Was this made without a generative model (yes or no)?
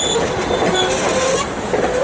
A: yes